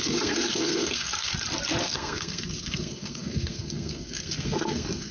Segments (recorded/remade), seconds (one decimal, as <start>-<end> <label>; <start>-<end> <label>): 0.0-1.3 remade; 1.3-1.8 recorded; 1.8-5.1 remade